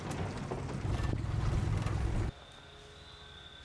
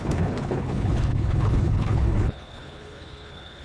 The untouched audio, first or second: first